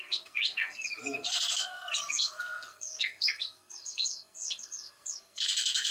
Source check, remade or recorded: remade